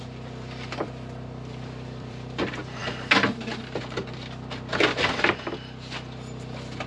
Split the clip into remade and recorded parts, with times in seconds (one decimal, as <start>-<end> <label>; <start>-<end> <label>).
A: 0.0-2.8 remade; 2.8-5.3 recorded; 5.3-6.9 remade

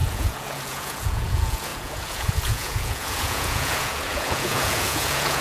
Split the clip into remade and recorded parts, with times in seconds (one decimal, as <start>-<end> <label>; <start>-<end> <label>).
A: 0.0-5.4 remade

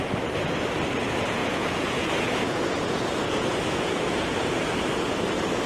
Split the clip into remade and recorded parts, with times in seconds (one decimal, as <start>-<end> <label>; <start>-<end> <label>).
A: 0.0-1.4 recorded; 1.4-4.8 remade; 4.8-5.7 recorded

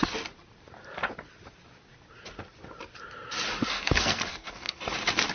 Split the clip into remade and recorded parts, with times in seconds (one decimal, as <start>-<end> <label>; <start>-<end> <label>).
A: 0.0-3.6 recorded; 3.6-4.8 remade; 4.8-5.3 recorded

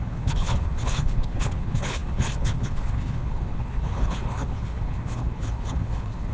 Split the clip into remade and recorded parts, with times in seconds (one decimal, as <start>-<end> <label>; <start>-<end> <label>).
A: 0.0-6.3 remade

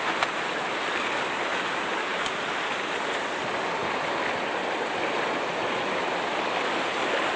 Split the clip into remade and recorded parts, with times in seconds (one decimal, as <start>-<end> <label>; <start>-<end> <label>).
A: 0.0-7.4 recorded

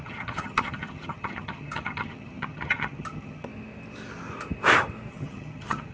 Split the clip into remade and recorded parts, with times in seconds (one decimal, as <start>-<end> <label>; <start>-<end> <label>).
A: 0.0-3.5 remade; 3.5-5.1 recorded; 5.1-5.9 remade

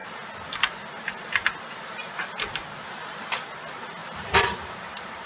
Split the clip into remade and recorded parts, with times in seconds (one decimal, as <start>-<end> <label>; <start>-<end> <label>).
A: 0.0-4.0 recorded; 4.0-5.3 remade